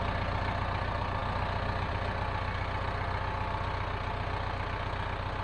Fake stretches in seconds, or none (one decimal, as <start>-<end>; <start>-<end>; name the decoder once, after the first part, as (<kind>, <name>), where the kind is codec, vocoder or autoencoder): none